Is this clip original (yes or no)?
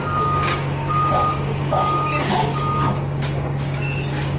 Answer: no